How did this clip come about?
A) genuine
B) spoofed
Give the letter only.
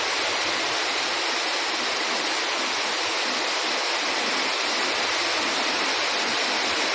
A